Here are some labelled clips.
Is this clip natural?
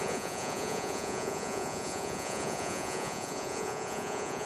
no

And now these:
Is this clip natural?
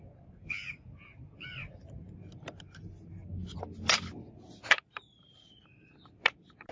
yes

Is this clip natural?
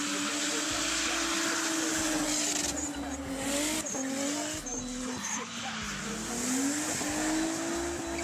yes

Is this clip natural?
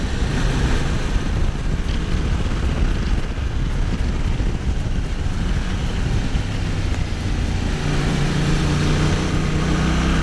yes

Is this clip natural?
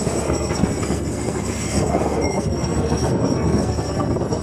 no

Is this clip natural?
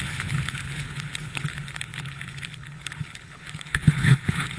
no